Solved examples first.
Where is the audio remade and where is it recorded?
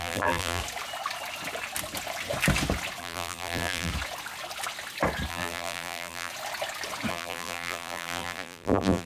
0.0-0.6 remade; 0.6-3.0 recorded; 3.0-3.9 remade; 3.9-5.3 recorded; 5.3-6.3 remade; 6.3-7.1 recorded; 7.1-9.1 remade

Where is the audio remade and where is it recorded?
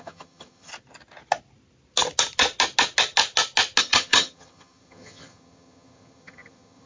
0.0-0.7 remade; 0.7-3.8 recorded; 3.8-6.9 remade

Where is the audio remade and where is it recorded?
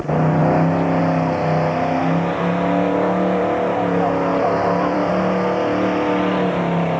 0.0-4.3 recorded; 4.3-5.1 remade; 5.1-7.0 recorded